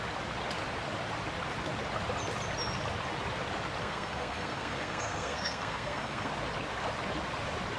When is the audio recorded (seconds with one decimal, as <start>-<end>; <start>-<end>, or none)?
0.0-3.8; 6.3-7.8

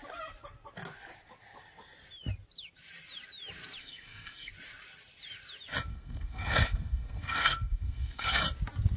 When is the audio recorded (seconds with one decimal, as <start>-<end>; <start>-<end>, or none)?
0.0-3.8; 4.5-5.9; 8.4-9.0

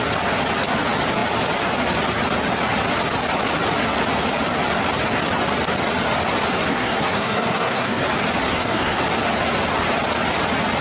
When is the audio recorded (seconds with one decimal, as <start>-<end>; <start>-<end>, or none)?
0.0-6.7; 8.0-8.5; 9.0-10.8

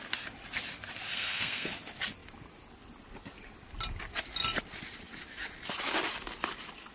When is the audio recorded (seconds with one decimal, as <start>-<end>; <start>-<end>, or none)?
0.0-1.1; 1.7-6.9

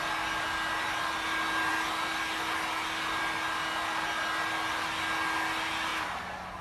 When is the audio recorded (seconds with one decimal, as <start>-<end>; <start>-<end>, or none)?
0.0-6.6

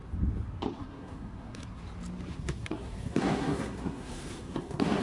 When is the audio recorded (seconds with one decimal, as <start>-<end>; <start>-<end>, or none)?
0.0-0.7; 1.8-2.3

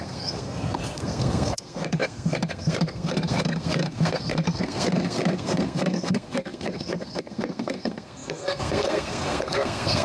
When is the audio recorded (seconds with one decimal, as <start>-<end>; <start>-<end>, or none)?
none